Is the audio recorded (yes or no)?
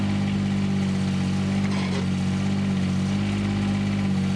yes